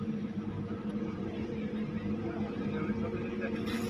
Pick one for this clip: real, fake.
real